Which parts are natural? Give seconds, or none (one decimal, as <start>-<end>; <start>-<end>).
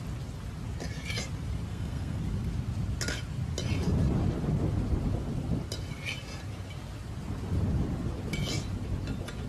0.0-1.7; 2.2-9.5